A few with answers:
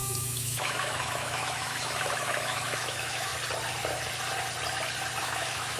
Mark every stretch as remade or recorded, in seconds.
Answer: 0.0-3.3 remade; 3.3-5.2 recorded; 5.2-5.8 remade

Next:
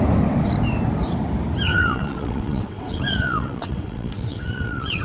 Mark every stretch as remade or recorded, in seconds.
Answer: 0.0-1.7 recorded; 1.7-5.0 remade